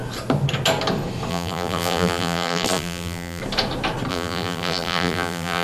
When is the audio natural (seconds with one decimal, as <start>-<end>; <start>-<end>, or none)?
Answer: 0.0-1.3; 3.4-4.1